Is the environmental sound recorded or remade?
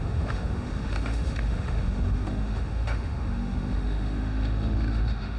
remade